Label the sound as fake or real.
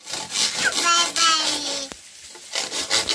real